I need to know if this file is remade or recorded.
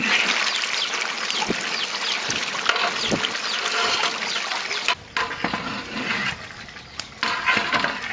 recorded